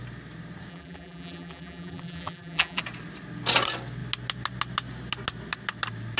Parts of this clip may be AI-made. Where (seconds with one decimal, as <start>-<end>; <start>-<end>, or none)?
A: 0.7-2.8